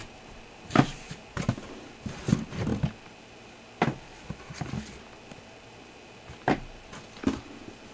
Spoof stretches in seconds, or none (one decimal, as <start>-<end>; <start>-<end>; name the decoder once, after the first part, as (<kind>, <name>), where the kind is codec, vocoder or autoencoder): 0.0-1.5 (vocoder, BigVGAN v2)